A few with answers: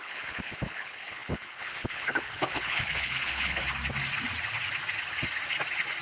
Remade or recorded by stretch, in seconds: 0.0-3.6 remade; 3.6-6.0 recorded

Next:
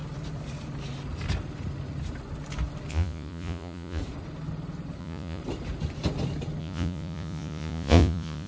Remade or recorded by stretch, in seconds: 0.0-2.9 recorded; 2.9-4.0 remade; 4.0-5.0 recorded; 5.0-5.4 remade; 5.4-6.6 recorded; 6.6-8.5 remade

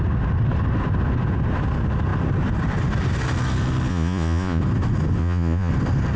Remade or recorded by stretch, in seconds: 0.0-3.9 recorded; 3.9-4.6 remade; 4.6-5.2 recorded; 5.2-5.7 remade; 5.7-6.2 recorded

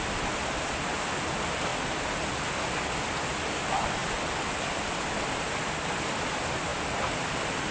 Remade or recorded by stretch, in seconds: 0.0-7.7 recorded

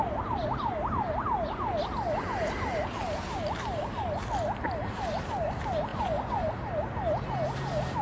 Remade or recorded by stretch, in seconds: 0.0-5.9 recorded; 5.9-6.5 remade; 6.5-8.0 recorded

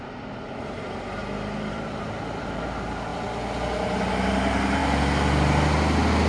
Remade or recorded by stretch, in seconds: 0.0-1.2 remade; 1.2-1.7 recorded; 1.7-3.1 remade; 3.1-4.1 recorded; 4.1-4.8 remade; 4.8-6.3 recorded

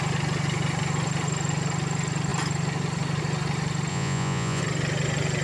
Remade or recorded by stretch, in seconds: 0.0-3.9 recorded; 3.9-4.6 remade; 4.6-5.4 recorded

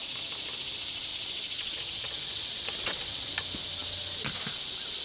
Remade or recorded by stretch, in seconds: 0.0-1.1 recorded; 1.1-3.3 remade; 3.3-5.0 recorded